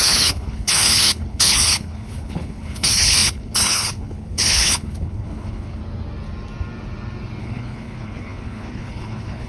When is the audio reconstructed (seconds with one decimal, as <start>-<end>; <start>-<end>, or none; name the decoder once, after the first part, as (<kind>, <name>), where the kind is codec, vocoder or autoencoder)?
0.0-5.8 (codec, HILCodec); 7.4-9.5